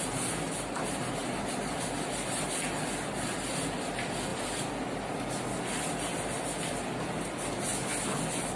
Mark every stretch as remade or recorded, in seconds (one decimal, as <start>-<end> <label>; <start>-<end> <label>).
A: 0.0-8.6 recorded